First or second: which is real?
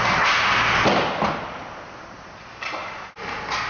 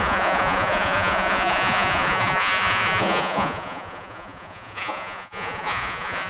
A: first